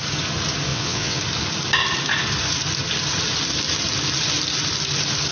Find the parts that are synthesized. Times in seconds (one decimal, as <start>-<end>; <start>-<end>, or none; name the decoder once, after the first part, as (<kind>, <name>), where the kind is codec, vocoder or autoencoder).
0.7-1.2 (vocoder, WaveNeXt)